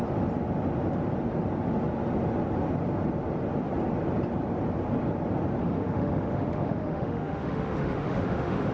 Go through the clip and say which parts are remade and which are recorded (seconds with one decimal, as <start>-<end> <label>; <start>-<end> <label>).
0.0-5.6 recorded; 5.6-8.7 remade